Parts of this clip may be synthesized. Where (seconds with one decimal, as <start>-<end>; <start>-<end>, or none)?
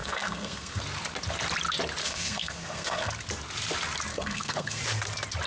0.0-0.8; 2.0-3.1; 4.1-4.8